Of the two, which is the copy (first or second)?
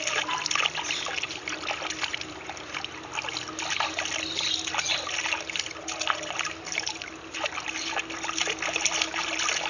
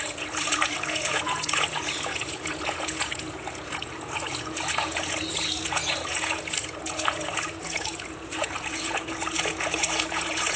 second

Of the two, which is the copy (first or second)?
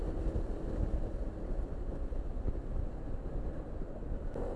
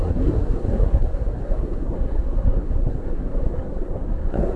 second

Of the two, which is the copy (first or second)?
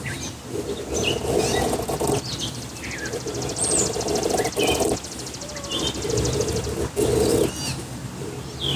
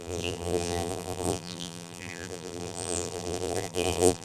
second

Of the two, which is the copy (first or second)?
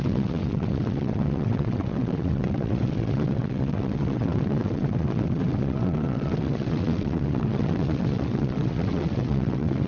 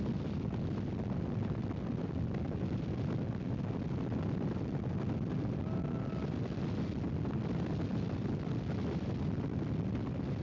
first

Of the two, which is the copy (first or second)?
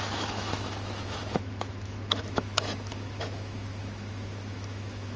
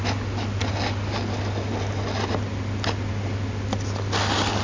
first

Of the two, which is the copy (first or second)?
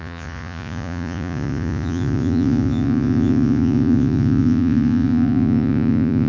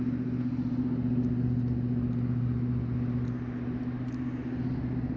first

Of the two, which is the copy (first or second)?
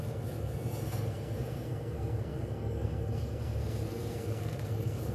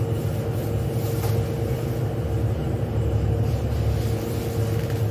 first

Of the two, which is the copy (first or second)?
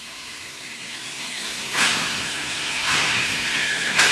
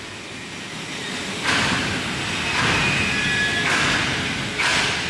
first